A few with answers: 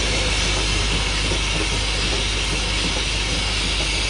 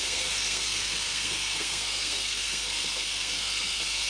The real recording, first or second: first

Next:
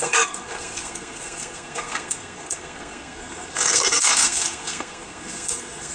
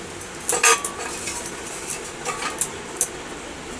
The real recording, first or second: second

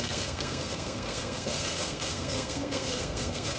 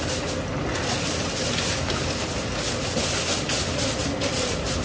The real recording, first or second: second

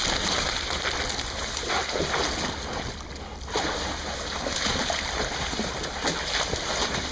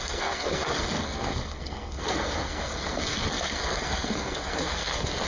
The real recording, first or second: first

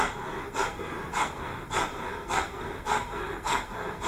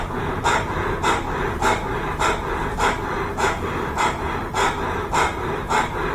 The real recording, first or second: second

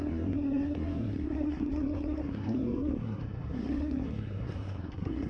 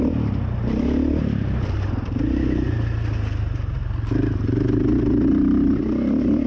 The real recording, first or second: second